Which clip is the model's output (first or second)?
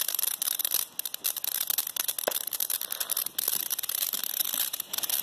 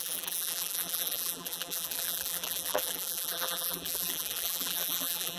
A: second